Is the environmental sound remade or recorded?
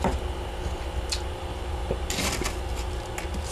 recorded